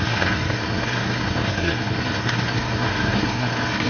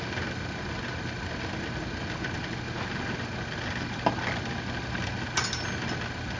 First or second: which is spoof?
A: first